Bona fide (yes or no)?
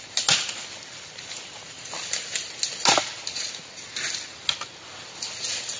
yes